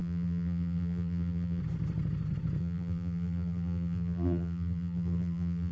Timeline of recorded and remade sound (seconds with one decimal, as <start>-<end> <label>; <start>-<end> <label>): 0.0-1.6 remade; 1.6-2.6 recorded; 2.6-5.7 remade